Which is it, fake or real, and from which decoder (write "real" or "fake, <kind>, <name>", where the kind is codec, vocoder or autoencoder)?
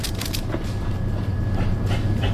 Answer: real